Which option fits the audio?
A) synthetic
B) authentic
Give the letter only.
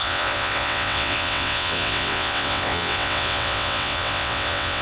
A